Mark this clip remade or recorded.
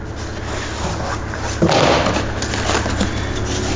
recorded